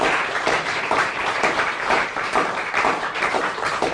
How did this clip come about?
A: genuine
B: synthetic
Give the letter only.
B